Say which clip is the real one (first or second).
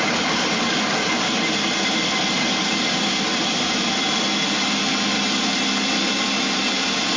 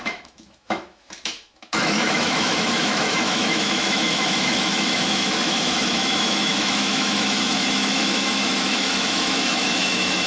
first